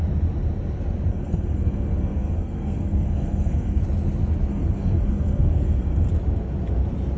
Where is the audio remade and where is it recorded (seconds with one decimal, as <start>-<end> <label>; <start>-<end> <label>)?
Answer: 0.0-1.1 recorded; 1.1-3.8 remade; 3.8-4.5 recorded; 4.5-6.1 remade; 6.1-7.2 recorded